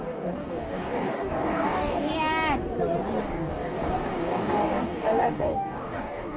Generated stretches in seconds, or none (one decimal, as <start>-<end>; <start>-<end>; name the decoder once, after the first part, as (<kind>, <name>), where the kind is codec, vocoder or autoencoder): 0.0-2.1 (codec, DAC); 3.2-6.4